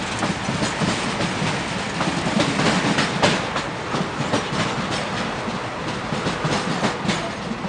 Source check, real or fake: real